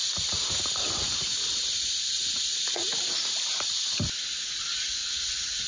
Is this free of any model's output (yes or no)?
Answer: yes